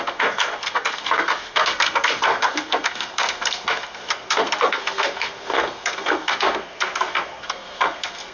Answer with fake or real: fake